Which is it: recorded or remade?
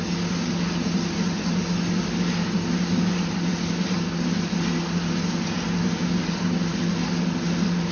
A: recorded